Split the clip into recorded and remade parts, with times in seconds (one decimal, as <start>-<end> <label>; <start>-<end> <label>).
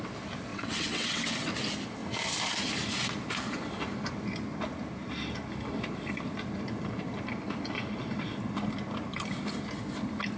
0.0-0.5 recorded; 0.5-1.5 remade; 1.5-10.4 recorded